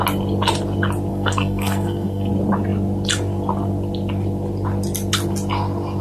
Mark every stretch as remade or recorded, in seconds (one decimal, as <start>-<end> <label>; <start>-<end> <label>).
0.0-1.1 recorded; 1.1-2.3 remade; 2.3-6.0 recorded